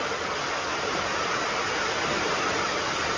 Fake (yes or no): no